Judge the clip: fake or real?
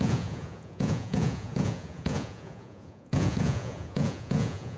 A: fake